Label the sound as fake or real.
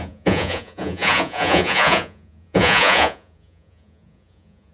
fake